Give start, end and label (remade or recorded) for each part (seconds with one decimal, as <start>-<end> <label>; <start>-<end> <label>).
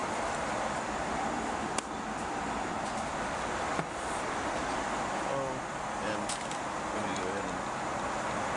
0.0-8.6 recorded